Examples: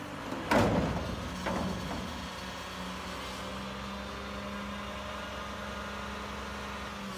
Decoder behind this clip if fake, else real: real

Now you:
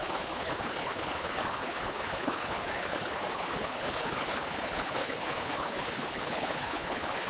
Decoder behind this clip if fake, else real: fake, codec, HILCodec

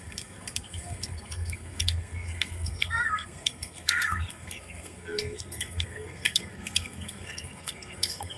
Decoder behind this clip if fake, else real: fake, codec, SNAC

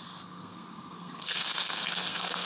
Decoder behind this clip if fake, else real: fake, codec, SNAC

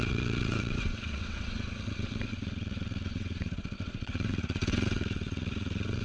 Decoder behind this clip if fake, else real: fake, vocoder, WaveNeXt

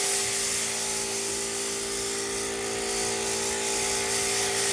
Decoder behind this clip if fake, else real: real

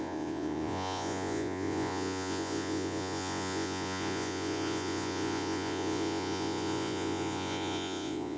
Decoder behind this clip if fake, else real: fake, vocoder, Vocos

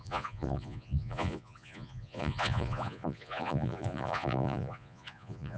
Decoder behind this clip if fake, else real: fake, vocoder, Vocos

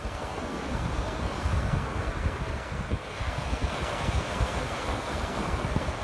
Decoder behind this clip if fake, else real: fake, codec, SNAC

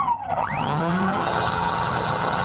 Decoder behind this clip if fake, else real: fake, vocoder, HiFi-GAN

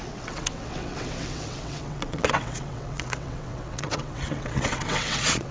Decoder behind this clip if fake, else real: fake, vocoder, WaveNeXt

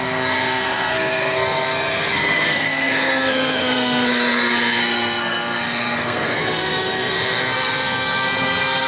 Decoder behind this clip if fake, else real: fake, codec, SNAC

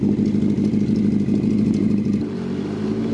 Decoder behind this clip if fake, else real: real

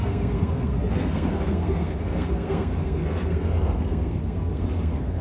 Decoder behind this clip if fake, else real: fake, codec, SNAC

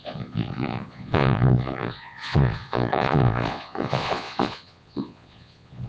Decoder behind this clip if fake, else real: fake, vocoder, Vocos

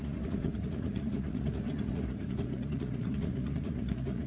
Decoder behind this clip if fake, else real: fake, vocoder, Vocos